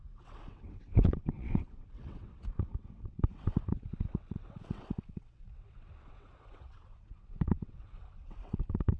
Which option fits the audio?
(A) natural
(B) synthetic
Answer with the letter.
B